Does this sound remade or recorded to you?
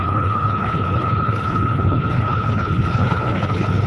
remade